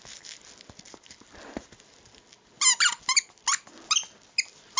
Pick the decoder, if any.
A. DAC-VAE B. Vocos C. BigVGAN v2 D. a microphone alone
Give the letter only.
D